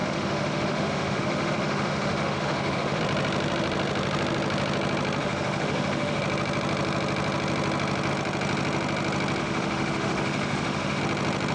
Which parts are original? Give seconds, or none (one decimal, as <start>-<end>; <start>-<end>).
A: 3.0-5.2; 6.2-9.4; 11.0-11.5